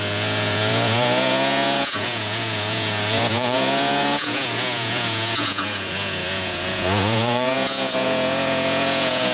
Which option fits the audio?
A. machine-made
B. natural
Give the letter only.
A